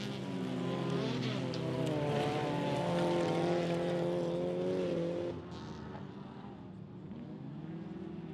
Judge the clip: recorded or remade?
recorded